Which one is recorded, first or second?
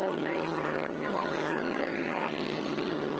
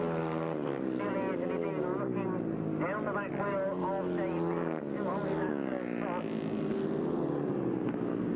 second